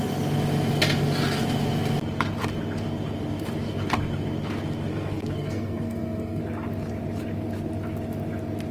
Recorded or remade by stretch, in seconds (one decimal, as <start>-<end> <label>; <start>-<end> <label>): 0.0-4.9 recorded; 4.9-6.4 remade; 6.4-8.7 recorded